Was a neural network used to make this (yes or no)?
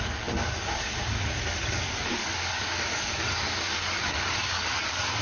yes